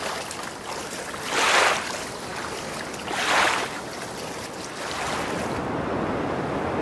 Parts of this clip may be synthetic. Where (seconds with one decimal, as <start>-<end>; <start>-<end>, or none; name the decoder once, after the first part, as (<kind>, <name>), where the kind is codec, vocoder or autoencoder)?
none